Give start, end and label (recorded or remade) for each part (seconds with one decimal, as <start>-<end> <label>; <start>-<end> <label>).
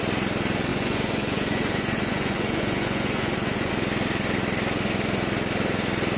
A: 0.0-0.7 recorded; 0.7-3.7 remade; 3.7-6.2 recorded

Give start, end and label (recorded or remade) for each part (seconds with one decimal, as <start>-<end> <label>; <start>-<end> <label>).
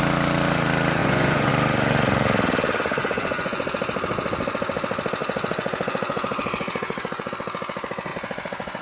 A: 0.0-1.0 recorded; 1.0-1.5 remade; 1.5-3.0 recorded; 3.0-3.6 remade; 3.6-5.2 recorded; 5.2-7.3 remade; 7.3-8.1 recorded; 8.1-8.8 remade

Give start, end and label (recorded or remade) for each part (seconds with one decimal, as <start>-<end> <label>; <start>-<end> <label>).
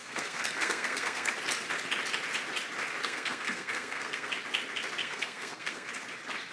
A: 0.0-1.3 remade; 1.3-3.0 recorded; 3.0-4.3 remade; 4.3-5.0 recorded; 5.0-5.9 remade; 5.9-6.5 recorded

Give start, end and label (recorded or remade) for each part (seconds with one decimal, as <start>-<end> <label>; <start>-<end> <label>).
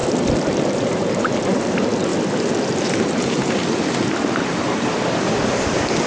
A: 0.0-0.7 recorded; 0.7-2.1 remade; 2.1-2.8 recorded; 2.8-3.6 remade; 3.6-4.4 recorded; 4.4-6.1 remade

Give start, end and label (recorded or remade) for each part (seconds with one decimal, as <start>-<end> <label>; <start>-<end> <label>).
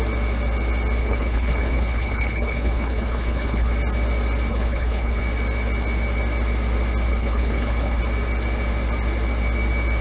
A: 0.0-1.0 recorded; 1.0-3.7 remade; 3.7-4.5 recorded; 4.5-5.2 remade; 5.2-7.1 recorded; 7.1-8.0 remade; 8.0-10.0 recorded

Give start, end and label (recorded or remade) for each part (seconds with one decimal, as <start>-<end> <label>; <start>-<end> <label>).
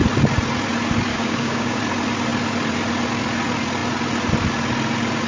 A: 0.0-1.1 recorded; 1.1-1.8 remade; 1.8-5.3 recorded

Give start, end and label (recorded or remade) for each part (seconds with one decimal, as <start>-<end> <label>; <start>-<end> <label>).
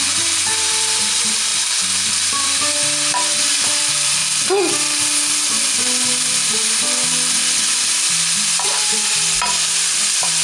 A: 0.0-1.5 remade; 1.5-2.3 recorded; 2.3-4.2 remade; 4.2-6.1 recorded; 6.1-9.2 remade; 9.2-10.0 recorded; 10.0-10.4 remade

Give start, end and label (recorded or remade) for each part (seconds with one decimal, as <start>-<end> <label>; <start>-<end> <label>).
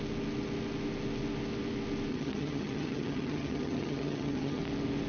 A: 0.0-2.1 recorded; 2.1-4.6 remade; 4.6-5.1 recorded